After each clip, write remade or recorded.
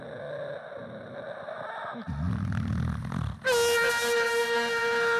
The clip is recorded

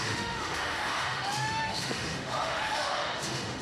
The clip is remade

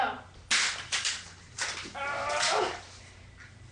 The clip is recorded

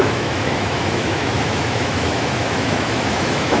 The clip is remade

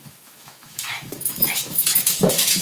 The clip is remade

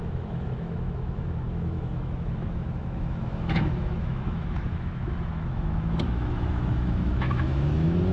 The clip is remade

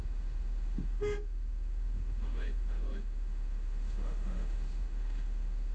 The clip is remade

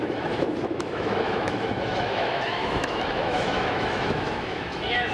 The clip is remade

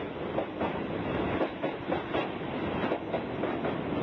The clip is recorded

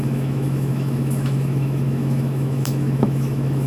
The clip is remade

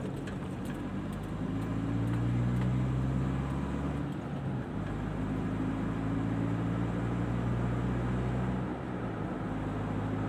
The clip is recorded